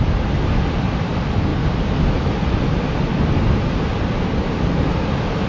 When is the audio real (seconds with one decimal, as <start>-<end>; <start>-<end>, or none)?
0.0-5.5